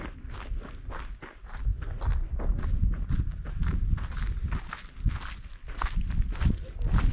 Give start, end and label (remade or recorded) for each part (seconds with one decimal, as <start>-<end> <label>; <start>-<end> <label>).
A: 0.0-7.1 recorded